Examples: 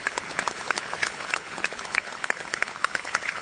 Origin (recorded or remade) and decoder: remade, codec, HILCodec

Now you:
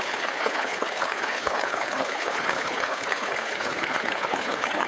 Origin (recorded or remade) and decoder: remade, codec, HILCodec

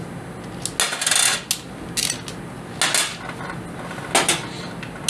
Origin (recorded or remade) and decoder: recorded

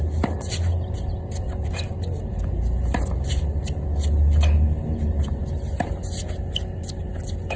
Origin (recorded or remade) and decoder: recorded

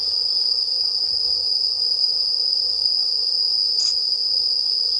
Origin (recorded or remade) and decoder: recorded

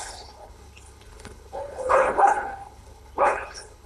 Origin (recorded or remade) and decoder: remade, codec, HILCodec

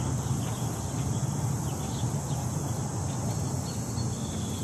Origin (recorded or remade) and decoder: recorded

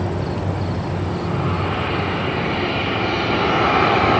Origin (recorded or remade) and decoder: recorded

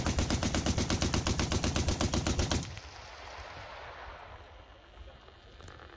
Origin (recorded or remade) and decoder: recorded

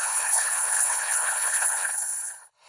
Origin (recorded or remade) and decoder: remade, codec, HILCodec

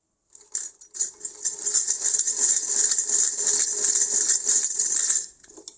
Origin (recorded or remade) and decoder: recorded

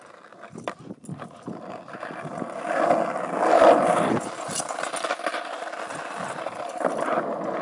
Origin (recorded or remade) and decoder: recorded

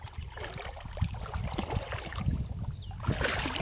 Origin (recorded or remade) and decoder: recorded